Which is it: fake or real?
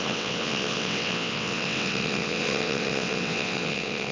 fake